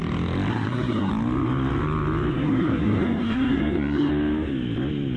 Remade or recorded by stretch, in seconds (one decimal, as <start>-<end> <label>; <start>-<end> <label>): 0.0-0.5 recorded; 0.5-1.1 remade; 1.1-2.3 recorded; 2.3-4.1 remade; 4.1-5.2 recorded